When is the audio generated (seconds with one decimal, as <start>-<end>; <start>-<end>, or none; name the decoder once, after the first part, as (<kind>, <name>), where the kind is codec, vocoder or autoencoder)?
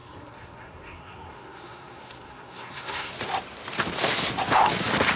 0.0-3.1 (codec, SNAC)